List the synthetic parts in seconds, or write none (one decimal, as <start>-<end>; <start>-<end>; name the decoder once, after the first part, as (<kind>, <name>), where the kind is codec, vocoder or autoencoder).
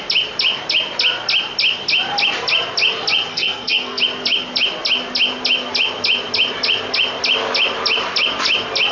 3.3-4.0 (codec, SNAC)